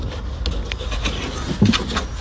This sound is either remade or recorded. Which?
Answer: recorded